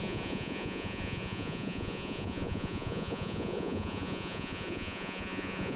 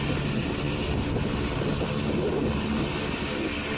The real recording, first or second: second